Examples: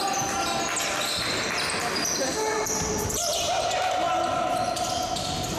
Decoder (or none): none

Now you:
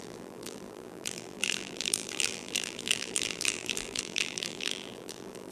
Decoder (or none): vocoder, BigVGAN v2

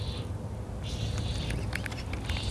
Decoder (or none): none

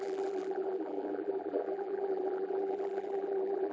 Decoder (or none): vocoder, BigVGAN v2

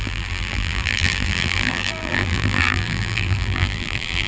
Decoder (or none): vocoder, BigVGAN v2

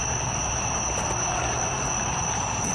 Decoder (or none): none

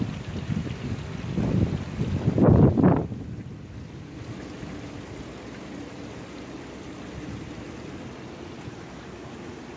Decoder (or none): none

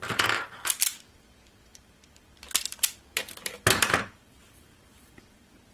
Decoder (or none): vocoder, BigVGAN v2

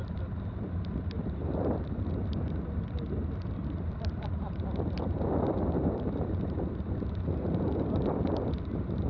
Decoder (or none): vocoder, BigVGAN v2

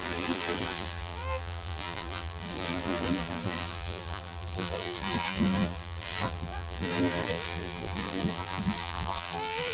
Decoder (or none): vocoder, BigVGAN v2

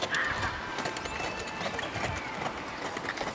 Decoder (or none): none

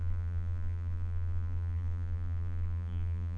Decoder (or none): vocoder, BigVGAN v2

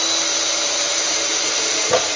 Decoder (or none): none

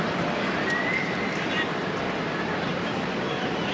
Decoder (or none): vocoder, BigVGAN v2